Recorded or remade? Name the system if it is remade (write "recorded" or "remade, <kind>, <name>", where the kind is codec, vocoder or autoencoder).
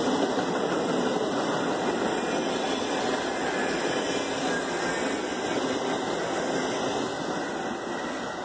recorded